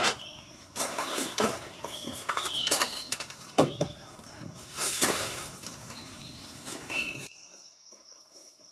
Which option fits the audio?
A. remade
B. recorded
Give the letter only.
A